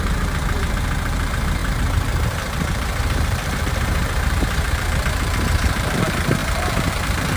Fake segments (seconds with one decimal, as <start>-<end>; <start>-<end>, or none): 0.0-7.4